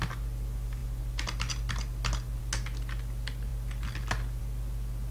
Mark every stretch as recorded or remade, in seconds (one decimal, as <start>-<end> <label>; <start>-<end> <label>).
0.0-5.1 recorded